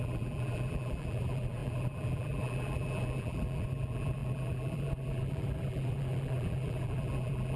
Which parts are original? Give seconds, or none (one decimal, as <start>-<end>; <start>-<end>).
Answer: none